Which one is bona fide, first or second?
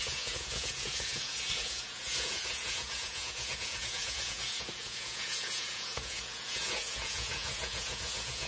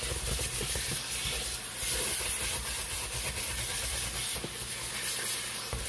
second